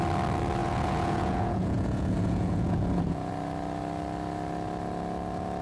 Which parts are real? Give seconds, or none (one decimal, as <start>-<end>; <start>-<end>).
0.0-0.6; 3.3-5.6